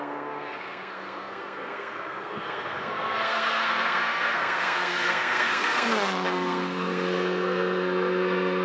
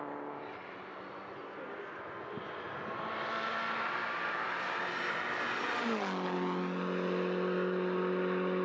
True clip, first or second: second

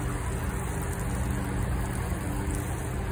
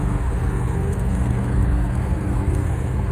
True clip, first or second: first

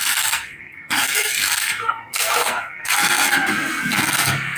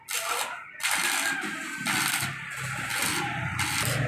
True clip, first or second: second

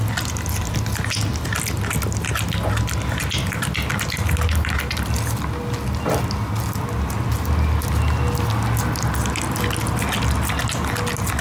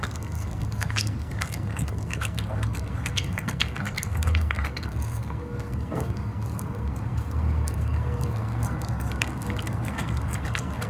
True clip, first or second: first